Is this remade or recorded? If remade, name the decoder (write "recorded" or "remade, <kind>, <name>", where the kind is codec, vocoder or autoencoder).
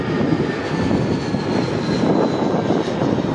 recorded